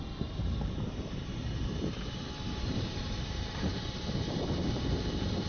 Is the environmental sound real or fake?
fake